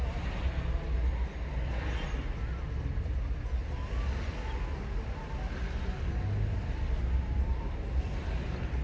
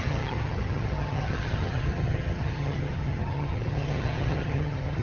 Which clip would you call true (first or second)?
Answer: first